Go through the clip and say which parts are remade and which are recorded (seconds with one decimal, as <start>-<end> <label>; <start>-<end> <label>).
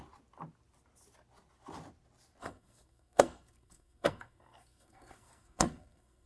0.0-2.4 recorded; 2.4-6.3 remade